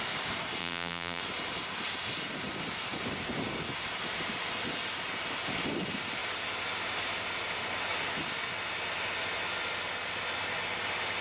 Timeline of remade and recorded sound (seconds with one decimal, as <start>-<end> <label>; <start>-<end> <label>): 0.0-0.6 recorded; 0.6-1.2 remade; 1.2-11.2 recorded

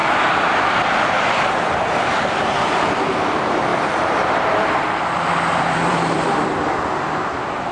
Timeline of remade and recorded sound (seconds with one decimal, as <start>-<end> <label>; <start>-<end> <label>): 0.0-2.2 remade; 2.2-3.7 recorded; 3.7-5.0 remade; 5.0-5.9 recorded; 5.9-6.6 remade; 6.6-7.7 recorded

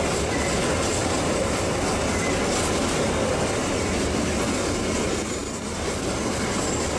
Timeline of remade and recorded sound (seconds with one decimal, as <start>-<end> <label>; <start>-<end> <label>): 0.0-1.0 recorded; 1.0-1.7 remade; 1.7-3.6 recorded; 3.6-4.3 remade; 4.3-7.0 recorded

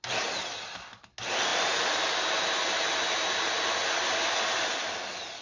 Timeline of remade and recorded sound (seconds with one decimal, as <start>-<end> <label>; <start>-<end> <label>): 0.0-1.5 recorded; 1.5-2.1 remade; 2.1-3.8 recorded; 3.8-4.9 remade; 4.9-5.4 recorded

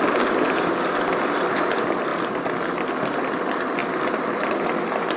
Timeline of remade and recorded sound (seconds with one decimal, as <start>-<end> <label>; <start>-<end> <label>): 0.0-2.1 remade; 2.1-2.8 recorded; 2.8-5.2 remade

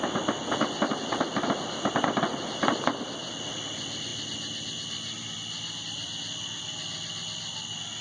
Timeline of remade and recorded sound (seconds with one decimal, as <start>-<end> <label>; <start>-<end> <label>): 0.0-8.0 recorded